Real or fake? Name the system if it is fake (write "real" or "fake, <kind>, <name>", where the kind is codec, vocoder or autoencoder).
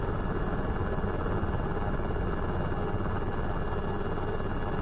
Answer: real